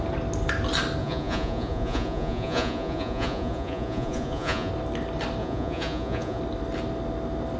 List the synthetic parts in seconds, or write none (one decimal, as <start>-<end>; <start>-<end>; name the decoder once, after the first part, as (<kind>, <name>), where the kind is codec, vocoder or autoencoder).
1.0-4.7 (vocoder, Vocos); 5.4-6.4